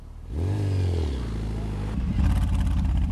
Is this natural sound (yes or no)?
yes